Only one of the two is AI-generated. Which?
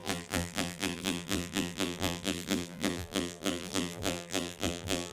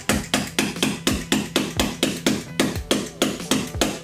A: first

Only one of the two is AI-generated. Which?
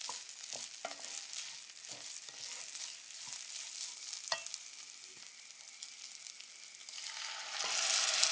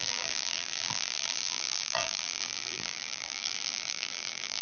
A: second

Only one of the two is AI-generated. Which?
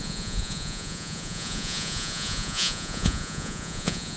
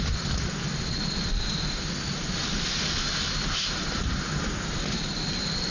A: first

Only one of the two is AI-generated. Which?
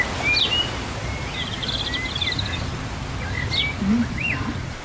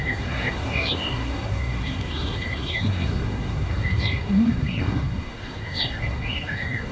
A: second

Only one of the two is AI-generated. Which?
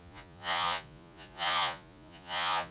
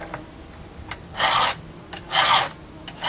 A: first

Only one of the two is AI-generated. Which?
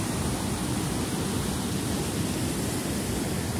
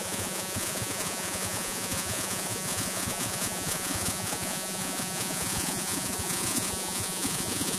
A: second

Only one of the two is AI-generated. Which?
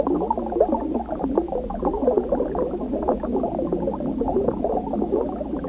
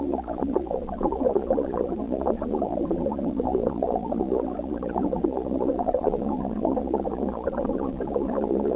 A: second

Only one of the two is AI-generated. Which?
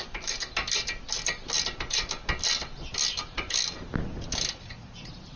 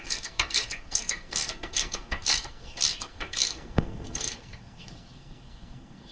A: second